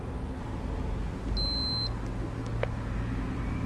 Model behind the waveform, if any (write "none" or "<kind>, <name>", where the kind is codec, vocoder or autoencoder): none